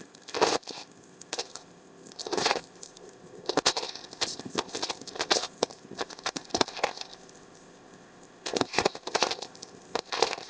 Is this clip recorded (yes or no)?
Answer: no